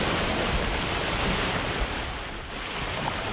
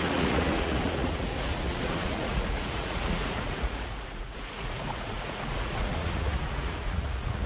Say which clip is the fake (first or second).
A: second